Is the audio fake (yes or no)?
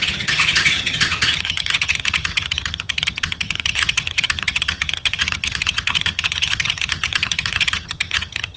yes